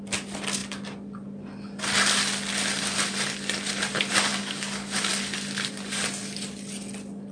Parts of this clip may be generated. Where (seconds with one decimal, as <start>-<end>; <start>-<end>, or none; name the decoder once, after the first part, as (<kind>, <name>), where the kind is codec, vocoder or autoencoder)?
4.3-5.1 (codec, DAC)